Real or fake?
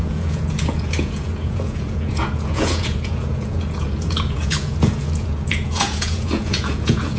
fake